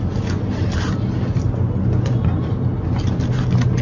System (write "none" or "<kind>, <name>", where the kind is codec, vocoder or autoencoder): none